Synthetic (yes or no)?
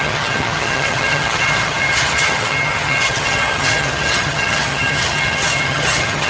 yes